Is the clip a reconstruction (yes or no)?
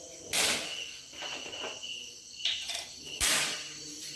no